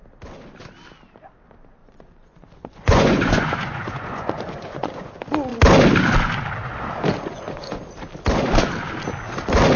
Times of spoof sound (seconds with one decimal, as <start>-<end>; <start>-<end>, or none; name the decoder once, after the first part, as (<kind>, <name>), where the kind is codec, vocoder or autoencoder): 1.8-5.1 (vocoder, Vocos); 7.3-7.8